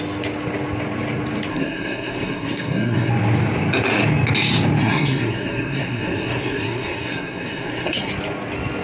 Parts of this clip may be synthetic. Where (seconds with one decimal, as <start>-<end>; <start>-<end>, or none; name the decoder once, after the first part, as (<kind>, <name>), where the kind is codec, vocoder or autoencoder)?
1.5-3.1 (codec, SNAC); 4.8-8.1